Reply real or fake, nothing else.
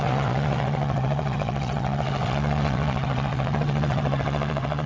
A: fake